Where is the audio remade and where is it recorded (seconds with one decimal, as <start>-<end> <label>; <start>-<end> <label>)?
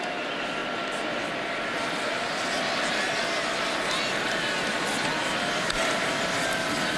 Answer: 0.0-7.0 recorded